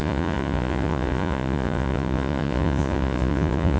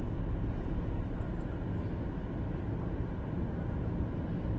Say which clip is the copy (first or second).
first